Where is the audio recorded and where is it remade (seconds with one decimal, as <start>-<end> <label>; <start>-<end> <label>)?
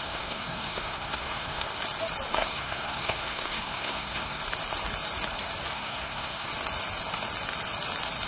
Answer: 0.0-1.7 remade; 1.7-2.3 recorded; 2.3-4.4 remade; 4.4-5.7 recorded; 5.7-6.5 remade; 6.5-8.3 recorded